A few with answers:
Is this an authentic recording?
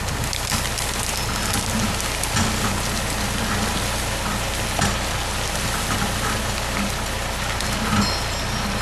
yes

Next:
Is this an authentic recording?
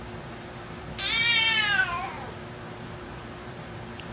no